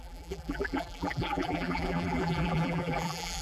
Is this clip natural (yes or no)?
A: no